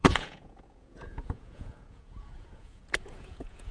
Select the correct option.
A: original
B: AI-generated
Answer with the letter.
B